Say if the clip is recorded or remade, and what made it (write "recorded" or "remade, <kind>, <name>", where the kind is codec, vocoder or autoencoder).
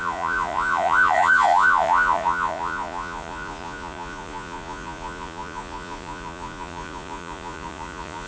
remade, vocoder, Vocos